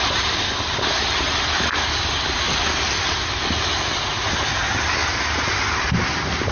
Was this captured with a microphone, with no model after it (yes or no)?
yes